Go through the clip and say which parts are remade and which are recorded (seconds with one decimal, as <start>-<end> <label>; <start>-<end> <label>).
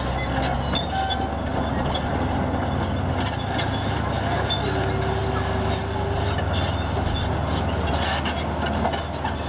0.0-9.5 recorded